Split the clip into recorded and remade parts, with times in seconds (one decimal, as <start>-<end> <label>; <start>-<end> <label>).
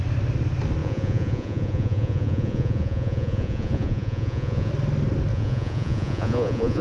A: 0.0-0.8 recorded; 0.8-4.7 remade; 4.7-5.3 recorded; 5.3-6.8 remade